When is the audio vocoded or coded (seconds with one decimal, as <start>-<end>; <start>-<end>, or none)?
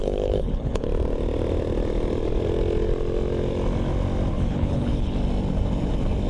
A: 0.0-0.9; 4.3-5.2